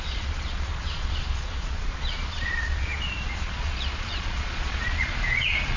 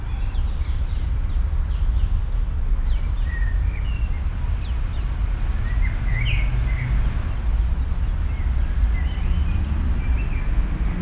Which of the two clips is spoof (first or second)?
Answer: first